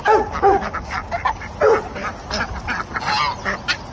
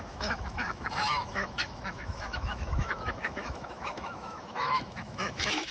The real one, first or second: first